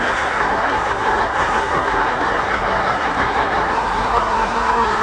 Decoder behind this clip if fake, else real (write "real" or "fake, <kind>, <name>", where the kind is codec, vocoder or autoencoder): fake, codec, SNAC